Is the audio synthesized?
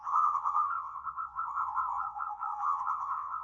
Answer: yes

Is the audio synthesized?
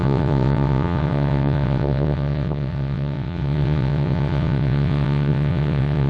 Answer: yes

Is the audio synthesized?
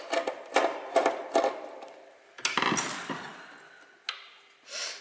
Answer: no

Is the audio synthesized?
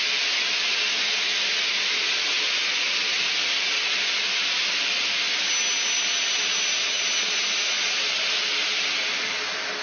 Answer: no